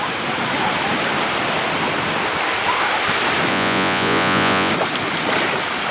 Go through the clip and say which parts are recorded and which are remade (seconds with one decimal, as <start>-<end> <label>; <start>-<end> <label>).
0.0-3.5 recorded; 3.5-4.7 remade; 4.7-5.9 recorded